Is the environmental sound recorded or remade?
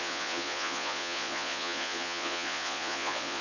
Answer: remade